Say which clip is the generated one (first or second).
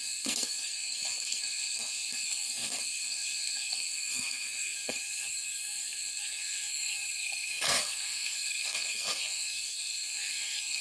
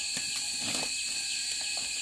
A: first